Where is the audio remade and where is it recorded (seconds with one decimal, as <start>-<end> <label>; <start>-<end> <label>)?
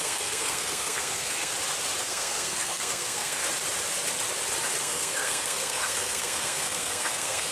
0.0-1.5 remade; 1.5-2.0 recorded; 2.0-3.4 remade; 3.4-4.8 recorded; 4.8-7.5 remade